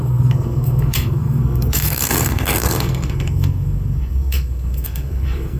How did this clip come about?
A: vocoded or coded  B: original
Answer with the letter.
A